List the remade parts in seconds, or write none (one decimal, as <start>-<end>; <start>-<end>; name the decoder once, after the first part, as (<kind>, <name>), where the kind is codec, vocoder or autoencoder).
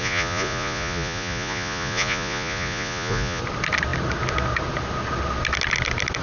0.0-3.4 (vocoder, Vocos)